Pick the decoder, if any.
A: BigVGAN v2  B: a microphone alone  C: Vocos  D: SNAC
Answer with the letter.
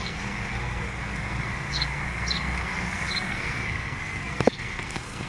D